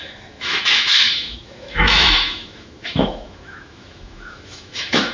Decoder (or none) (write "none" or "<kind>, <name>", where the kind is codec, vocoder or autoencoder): autoencoder, DAC-VAE